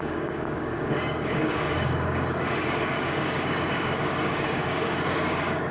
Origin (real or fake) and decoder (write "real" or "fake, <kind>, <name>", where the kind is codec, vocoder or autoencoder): fake, codec, DAC